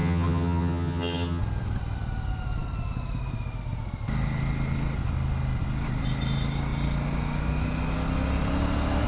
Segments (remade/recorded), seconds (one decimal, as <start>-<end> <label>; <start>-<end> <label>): 0.0-1.4 remade; 1.4-9.1 recorded